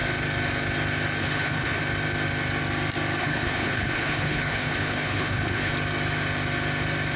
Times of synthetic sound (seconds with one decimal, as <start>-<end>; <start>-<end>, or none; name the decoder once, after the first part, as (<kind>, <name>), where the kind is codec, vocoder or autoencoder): 1.2-1.8 (codec, HILCodec); 3.2-5.7